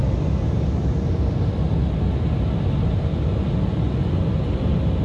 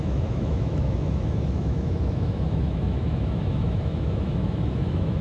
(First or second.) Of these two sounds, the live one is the first